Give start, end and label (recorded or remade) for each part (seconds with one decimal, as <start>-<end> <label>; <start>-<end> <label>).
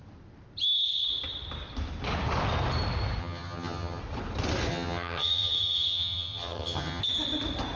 0.0-3.2 recorded; 3.2-4.0 remade; 4.0-4.7 recorded; 4.7-7.0 remade; 7.0-7.8 recorded